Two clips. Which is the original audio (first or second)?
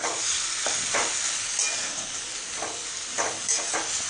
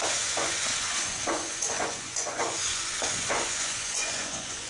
first